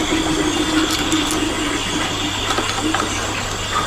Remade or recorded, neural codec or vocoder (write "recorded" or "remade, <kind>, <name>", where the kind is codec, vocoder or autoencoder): recorded